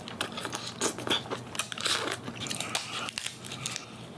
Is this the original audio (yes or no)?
yes